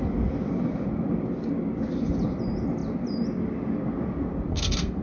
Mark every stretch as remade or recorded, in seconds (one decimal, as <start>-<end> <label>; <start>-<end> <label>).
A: 0.0-4.5 recorded; 4.5-5.0 remade